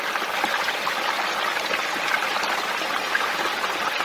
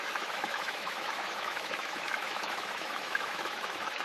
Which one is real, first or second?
first